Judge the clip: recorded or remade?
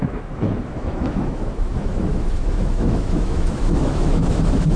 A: remade